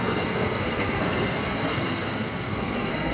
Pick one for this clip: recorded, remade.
remade